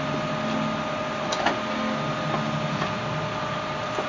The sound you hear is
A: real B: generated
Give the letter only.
A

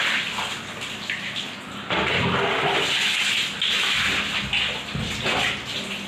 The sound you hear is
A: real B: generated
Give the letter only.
A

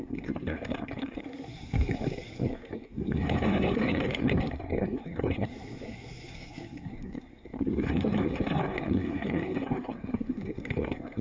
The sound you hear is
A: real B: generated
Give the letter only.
B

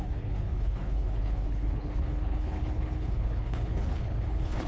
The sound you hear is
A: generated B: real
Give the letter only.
A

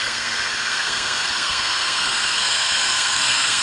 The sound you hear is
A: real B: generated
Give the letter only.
B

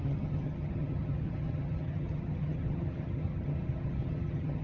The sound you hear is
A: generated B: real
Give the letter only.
A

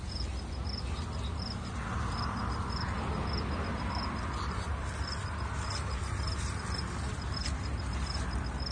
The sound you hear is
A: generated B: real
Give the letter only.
B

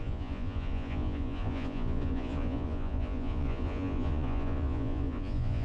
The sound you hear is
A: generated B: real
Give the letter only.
A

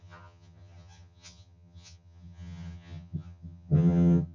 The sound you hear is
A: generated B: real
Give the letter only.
A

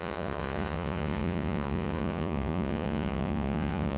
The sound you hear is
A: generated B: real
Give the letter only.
A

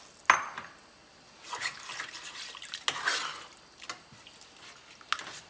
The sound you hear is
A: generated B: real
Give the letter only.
B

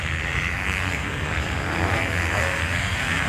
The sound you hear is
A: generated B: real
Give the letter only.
A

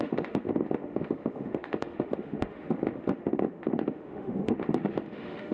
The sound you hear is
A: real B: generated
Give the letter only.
B